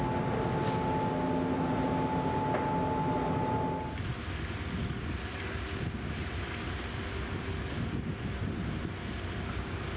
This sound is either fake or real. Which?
real